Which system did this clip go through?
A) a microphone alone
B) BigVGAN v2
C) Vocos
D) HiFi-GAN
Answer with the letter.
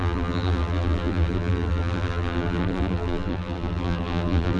B